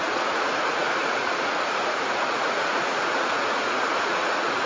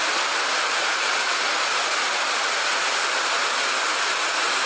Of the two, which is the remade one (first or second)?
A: first